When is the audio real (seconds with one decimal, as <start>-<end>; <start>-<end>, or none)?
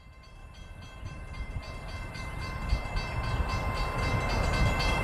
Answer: 0.4-1.0; 1.6-2.1; 2.6-5.0